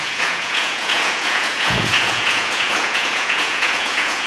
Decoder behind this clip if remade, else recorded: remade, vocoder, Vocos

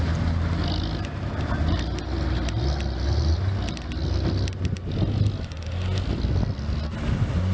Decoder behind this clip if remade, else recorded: recorded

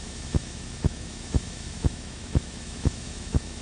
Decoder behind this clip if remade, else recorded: remade, autoencoder, DAC-VAE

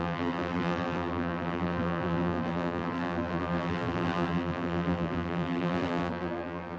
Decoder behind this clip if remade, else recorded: remade, vocoder, BigVGAN v2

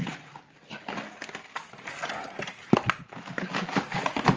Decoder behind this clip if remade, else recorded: recorded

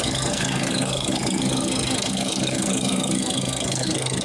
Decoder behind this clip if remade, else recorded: remade, codec, SNAC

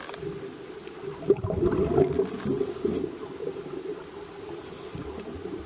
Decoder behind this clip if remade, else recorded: recorded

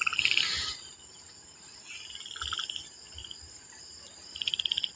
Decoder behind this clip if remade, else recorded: recorded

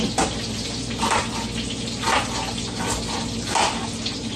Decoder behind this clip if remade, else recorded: recorded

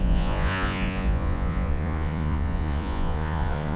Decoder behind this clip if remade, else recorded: remade, vocoder, Vocos